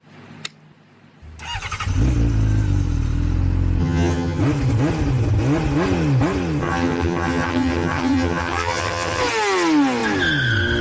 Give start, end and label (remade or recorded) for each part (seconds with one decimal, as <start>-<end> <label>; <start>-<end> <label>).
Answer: 0.0-3.8 recorded; 3.8-4.4 remade; 4.4-6.6 recorded; 6.6-9.2 remade; 9.2-10.8 recorded